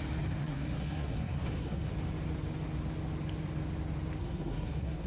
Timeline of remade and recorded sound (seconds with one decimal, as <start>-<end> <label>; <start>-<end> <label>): 0.0-0.4 recorded; 0.4-1.9 remade; 1.9-4.2 recorded; 4.2-5.1 remade